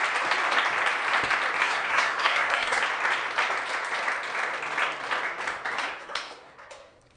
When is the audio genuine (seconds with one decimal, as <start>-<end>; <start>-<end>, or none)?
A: 0.0-1.6; 2.8-5.8